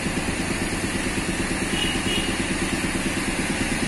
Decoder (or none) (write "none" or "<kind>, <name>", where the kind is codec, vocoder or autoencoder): none